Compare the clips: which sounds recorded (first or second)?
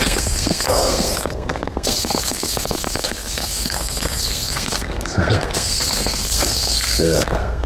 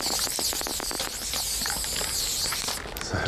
second